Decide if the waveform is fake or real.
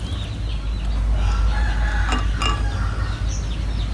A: real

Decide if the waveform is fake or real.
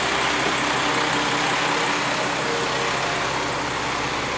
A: real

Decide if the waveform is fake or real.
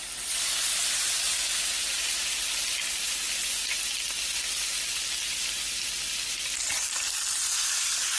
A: real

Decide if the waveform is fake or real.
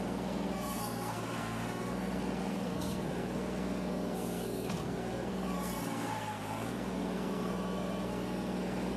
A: fake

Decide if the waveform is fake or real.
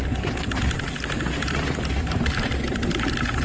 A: real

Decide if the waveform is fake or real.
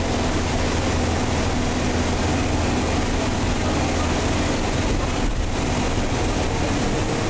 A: real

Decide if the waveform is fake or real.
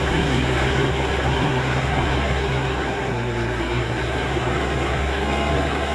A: fake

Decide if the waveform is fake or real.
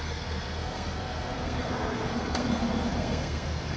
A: fake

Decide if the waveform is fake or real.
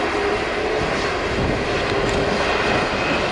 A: real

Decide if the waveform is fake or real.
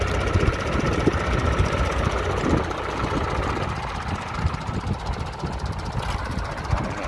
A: real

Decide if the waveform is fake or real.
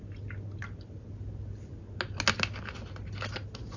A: real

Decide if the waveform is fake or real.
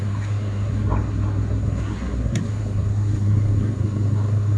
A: fake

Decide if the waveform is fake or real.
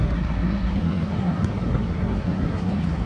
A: fake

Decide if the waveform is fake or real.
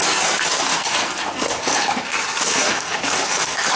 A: fake